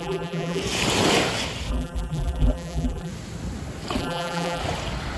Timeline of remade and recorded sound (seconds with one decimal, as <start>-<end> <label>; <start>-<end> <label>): 0.0-0.6 remade; 0.6-1.7 recorded; 1.7-3.1 remade; 3.1-4.0 recorded; 4.0-4.6 remade; 4.6-5.2 recorded